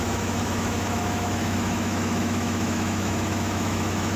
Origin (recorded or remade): remade